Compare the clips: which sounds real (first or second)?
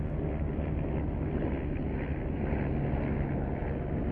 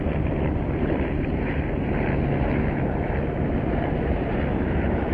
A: first